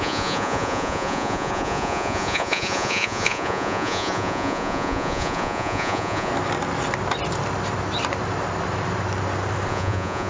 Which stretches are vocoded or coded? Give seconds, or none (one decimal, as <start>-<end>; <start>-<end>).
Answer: 0.0-6.3; 9.7-10.3